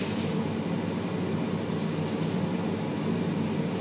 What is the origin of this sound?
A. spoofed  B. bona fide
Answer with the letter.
B